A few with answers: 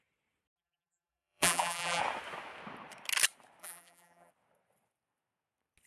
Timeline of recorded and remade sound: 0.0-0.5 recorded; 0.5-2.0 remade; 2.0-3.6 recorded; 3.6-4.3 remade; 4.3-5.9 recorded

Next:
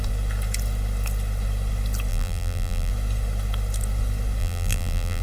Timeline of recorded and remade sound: 0.0-2.1 recorded; 2.1-2.9 remade; 2.9-4.4 recorded; 4.4-5.2 remade

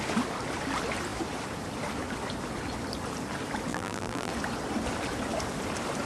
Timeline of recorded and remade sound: 0.0-3.7 recorded; 3.7-4.3 remade; 4.3-6.1 recorded

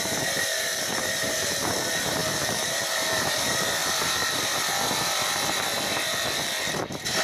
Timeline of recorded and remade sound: 0.0-3.8 remade; 3.8-6.7 recorded; 6.7-7.2 remade

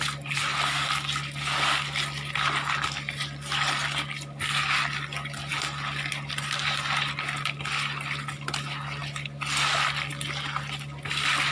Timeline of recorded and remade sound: 0.0-11.5 recorded

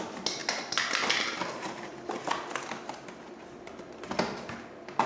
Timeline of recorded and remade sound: 0.0-5.1 recorded

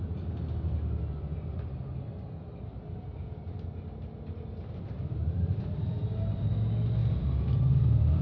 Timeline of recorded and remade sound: 0.0-3.1 recorded; 3.1-6.5 remade; 6.5-7.0 recorded; 7.0-8.2 remade

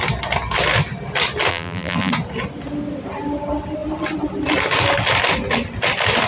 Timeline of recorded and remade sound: 0.0-1.5 recorded; 1.5-2.1 remade; 2.1-6.3 recorded